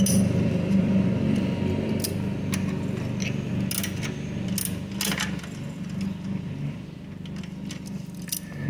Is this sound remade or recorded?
recorded